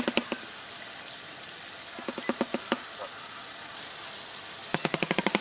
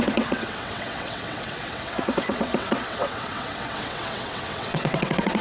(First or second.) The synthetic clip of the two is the second